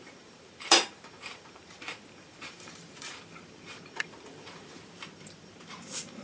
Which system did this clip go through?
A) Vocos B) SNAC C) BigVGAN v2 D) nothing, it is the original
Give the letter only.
C